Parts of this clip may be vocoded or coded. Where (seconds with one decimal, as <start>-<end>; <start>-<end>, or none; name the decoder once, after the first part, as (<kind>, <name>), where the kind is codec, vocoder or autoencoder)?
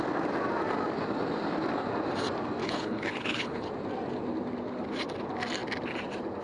2.6-3.7 (codec, HILCodec)